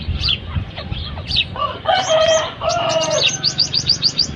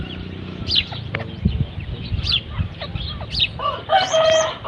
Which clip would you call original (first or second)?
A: second